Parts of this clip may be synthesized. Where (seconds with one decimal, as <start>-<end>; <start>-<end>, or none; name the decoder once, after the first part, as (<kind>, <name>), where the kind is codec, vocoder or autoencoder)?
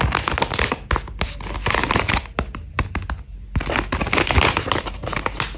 none